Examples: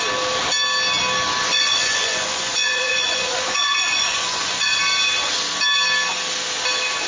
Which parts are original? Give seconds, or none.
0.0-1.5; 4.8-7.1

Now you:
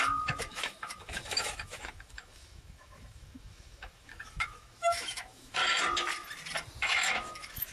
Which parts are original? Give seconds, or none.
5.6-6.8

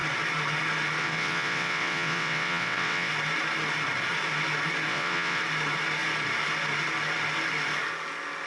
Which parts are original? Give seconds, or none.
0.0-1.0; 3.1-4.9; 5.4-8.5

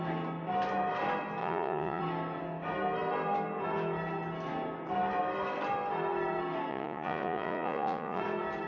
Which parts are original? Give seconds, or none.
0.0-1.4; 2.0-6.7; 8.2-8.7

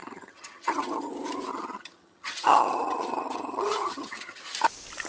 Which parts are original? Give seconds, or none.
1.1-1.5; 4.4-5.1